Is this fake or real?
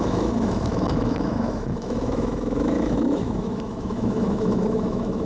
fake